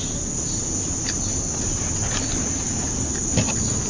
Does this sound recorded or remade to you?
recorded